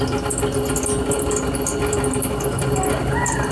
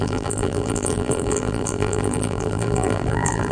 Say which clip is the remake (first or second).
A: second